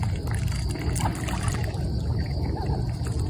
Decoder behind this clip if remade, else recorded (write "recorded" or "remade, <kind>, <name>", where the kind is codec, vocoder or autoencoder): recorded